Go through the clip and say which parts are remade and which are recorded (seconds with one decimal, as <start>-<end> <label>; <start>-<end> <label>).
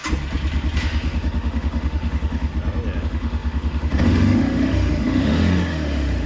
0.0-0.8 recorded; 0.8-2.5 remade; 2.5-3.0 recorded; 3.0-6.3 remade